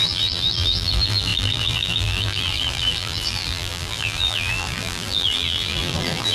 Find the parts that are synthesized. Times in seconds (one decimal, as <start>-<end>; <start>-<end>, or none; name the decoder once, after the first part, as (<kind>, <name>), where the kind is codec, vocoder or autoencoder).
0.0-6.3 (vocoder, BigVGAN v2)